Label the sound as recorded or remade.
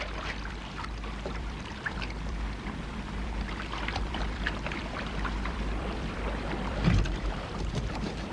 remade